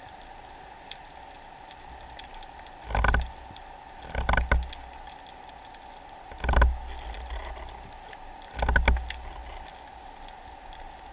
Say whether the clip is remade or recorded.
recorded